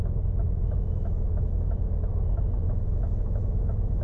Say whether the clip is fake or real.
fake